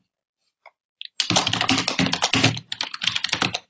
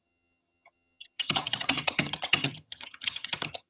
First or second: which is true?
first